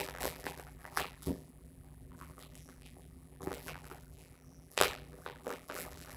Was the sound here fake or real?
fake